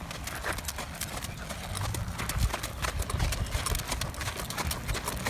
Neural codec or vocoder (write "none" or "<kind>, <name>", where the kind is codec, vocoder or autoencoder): none